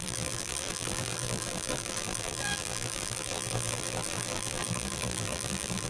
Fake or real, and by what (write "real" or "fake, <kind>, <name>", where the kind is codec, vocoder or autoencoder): fake, vocoder, BigVGAN v2